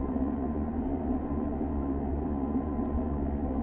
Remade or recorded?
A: remade